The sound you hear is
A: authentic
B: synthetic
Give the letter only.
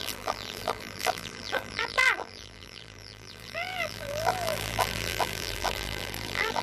B